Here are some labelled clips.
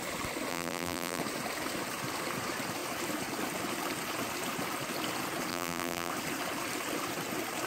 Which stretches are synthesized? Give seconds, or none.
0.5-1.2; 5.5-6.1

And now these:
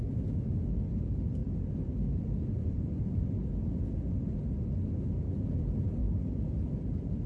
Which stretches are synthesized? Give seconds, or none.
1.4-3.5; 6.0-7.3

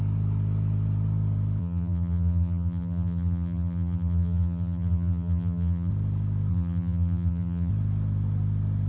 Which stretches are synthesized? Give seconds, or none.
1.6-5.9; 6.5-7.7

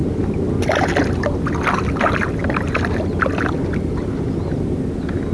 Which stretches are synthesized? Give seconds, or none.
none